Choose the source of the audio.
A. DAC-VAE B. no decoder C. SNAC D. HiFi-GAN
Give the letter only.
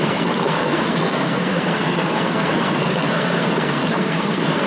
C